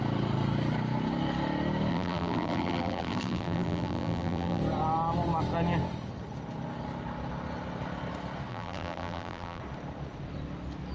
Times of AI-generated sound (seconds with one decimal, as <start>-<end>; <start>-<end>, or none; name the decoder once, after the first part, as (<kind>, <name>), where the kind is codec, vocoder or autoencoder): 1.9-4.6 (vocoder, BigVGAN v2); 8.5-9.6